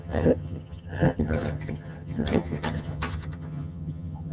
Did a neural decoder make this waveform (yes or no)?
yes